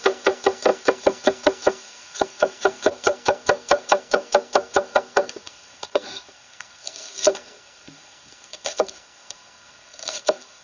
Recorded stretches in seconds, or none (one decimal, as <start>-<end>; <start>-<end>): none